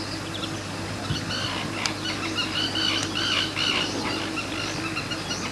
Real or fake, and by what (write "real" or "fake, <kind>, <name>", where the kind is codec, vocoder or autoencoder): real